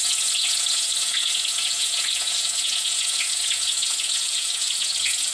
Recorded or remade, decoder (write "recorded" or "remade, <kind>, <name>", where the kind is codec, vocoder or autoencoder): remade, vocoder, Vocos